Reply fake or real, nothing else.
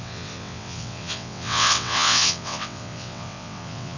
fake